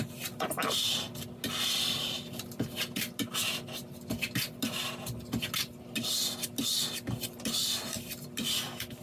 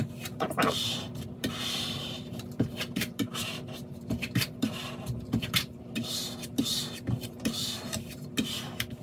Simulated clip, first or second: second